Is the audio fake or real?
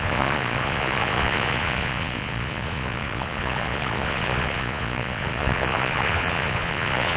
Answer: fake